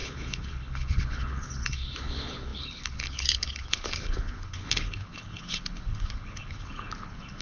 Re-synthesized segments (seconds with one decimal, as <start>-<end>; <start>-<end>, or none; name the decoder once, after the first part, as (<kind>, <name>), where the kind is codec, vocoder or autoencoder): 0.0-7.4 (codec, HILCodec)